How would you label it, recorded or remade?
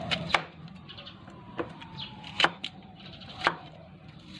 remade